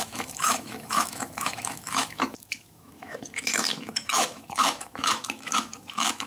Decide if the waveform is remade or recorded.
remade